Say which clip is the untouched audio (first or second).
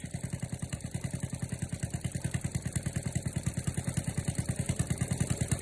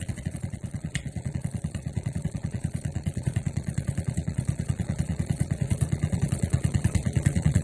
first